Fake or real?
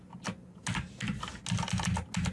real